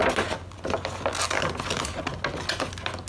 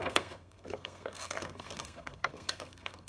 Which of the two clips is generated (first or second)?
second